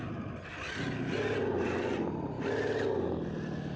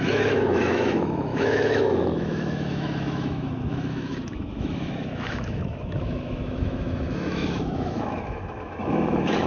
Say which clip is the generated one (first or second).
second